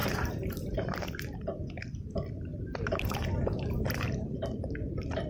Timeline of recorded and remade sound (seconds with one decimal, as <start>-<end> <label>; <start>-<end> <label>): 0.0-1.4 remade; 1.4-2.5 recorded; 2.5-5.3 remade